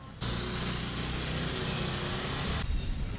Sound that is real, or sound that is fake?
real